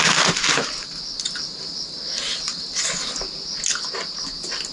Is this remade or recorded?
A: recorded